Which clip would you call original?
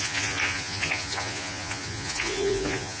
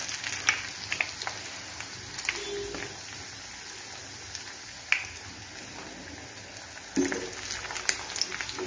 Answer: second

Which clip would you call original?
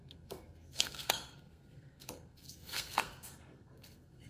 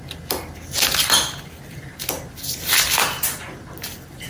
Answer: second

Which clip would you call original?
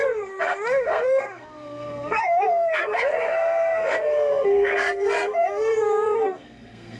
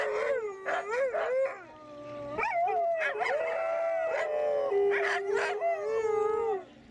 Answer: second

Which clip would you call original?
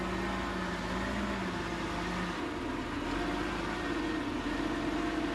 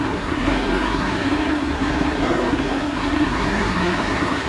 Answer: first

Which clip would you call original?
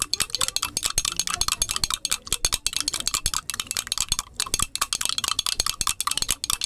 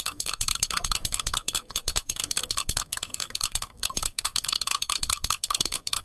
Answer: first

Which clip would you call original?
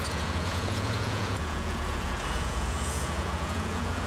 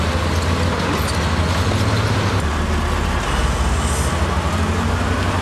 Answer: second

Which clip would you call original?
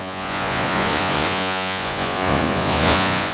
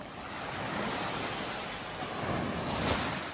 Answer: second